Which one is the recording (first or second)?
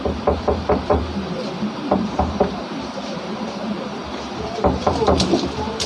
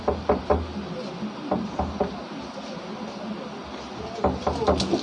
second